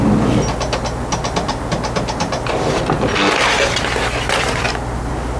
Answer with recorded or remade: recorded